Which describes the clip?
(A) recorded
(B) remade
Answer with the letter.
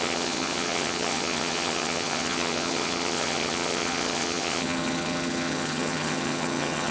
B